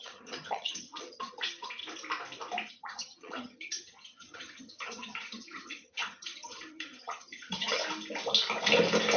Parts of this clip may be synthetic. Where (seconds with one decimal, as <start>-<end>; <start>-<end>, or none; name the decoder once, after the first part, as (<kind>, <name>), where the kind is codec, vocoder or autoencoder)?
0.0-1.8 (vocoder, HiFi-GAN); 2.7-7.8